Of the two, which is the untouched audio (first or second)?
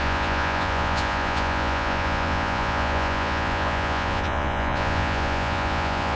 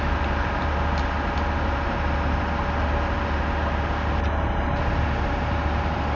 second